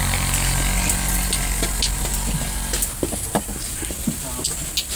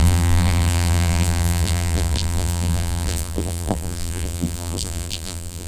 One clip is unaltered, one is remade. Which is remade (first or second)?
second